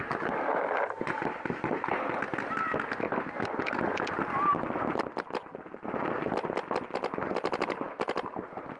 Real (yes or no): yes